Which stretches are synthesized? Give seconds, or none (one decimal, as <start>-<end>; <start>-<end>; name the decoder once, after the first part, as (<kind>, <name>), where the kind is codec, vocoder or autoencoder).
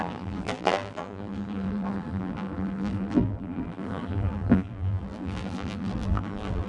0.0-6.7 (vocoder, BigVGAN v2)